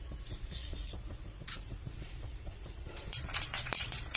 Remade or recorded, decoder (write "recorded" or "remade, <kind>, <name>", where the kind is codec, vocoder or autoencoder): remade, vocoder, Vocos